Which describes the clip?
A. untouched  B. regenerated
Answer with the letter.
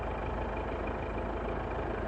A